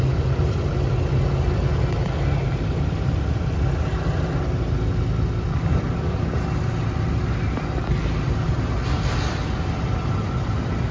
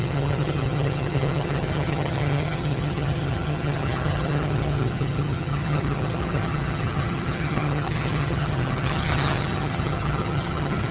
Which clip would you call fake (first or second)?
second